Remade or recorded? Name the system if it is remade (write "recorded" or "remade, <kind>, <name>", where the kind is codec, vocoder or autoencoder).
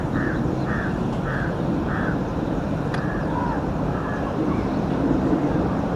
remade, vocoder, BigVGAN v2